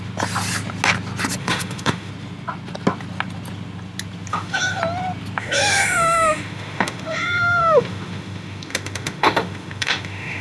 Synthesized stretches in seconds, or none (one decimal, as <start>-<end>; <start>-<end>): 1.4-2.1; 4.3-4.8; 5.4-10.4